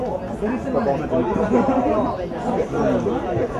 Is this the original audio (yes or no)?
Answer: yes